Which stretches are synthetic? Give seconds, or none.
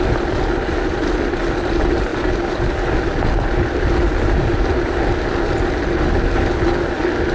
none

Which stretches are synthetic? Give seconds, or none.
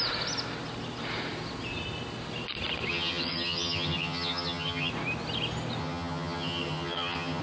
2.9-4.9; 5.8-7.4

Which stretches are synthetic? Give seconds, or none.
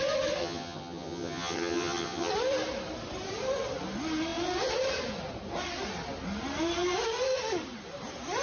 0.4-2.3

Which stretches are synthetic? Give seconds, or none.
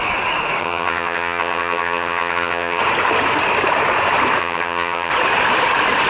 0.6-2.8; 4.4-5.1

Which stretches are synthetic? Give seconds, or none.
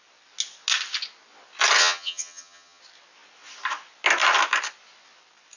1.8-2.8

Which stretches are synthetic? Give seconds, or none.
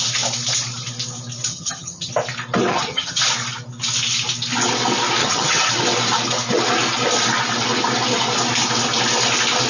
1.5-2.1; 2.7-3.2; 5.2-5.7